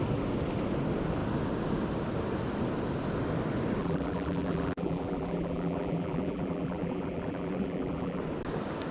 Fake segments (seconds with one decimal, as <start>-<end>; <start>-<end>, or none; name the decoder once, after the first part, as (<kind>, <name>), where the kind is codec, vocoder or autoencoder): 3.8-8.2 (vocoder, BigVGAN v2)